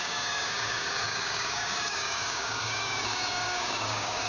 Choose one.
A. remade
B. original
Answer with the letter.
A